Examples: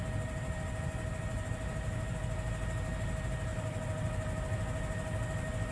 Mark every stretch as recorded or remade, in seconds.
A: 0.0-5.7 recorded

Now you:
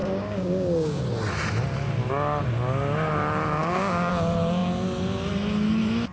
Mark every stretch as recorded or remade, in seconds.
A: 0.0-1.0 remade; 1.0-3.6 recorded; 3.6-4.1 remade; 4.1-6.1 recorded

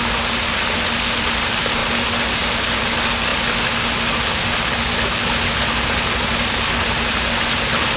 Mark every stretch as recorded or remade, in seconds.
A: 0.0-8.0 recorded

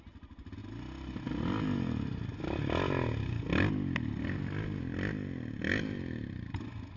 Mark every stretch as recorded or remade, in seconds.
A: 0.0-7.0 recorded

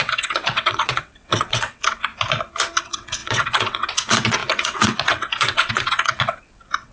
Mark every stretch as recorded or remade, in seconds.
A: 0.0-2.1 remade; 2.1-2.8 recorded; 2.8-6.9 remade